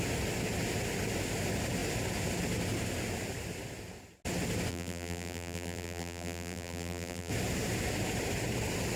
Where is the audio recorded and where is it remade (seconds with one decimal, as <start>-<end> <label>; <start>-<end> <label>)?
0.0-4.7 recorded; 4.7-7.3 remade; 7.3-9.0 recorded